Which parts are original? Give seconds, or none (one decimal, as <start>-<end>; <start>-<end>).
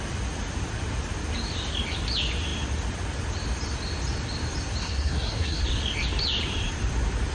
0.0-4.8; 5.6-7.3